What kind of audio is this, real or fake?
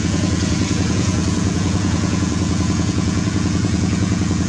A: fake